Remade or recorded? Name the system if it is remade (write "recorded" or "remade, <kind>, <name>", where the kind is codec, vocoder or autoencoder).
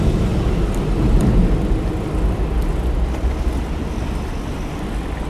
recorded